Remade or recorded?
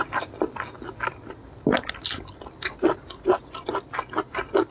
recorded